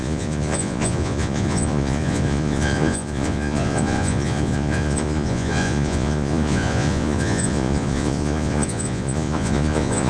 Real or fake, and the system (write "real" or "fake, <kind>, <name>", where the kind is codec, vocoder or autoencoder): fake, vocoder, Vocos